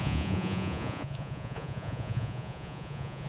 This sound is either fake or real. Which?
fake